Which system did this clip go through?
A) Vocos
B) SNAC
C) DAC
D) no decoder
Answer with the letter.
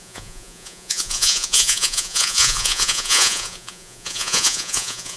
A